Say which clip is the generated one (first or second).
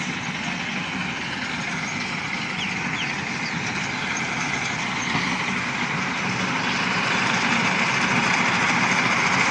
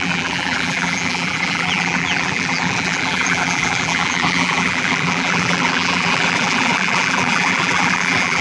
second